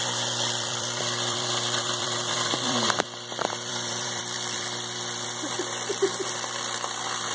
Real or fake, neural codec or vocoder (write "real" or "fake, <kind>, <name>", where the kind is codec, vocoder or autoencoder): fake, vocoder, BigVGAN v2